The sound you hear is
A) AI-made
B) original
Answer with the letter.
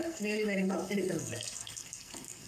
A